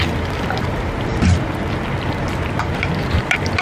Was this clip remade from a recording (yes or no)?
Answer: no